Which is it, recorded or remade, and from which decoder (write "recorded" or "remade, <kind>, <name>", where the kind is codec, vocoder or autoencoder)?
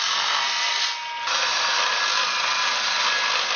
recorded